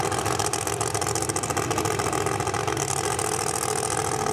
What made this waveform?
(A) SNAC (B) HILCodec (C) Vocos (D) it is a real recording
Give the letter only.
D